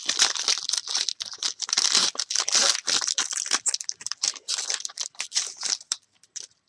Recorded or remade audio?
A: remade